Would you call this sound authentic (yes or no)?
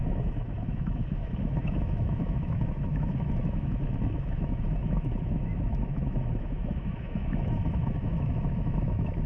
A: no